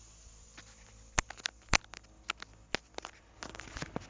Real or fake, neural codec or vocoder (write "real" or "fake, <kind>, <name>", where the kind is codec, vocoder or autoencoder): real